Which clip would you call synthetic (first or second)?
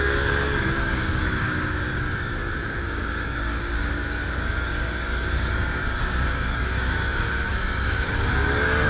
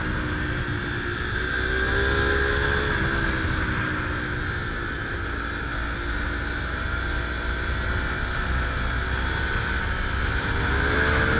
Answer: first